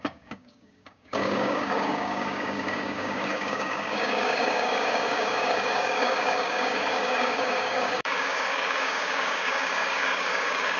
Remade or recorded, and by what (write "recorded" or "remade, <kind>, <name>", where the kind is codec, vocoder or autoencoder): remade, codec, DAC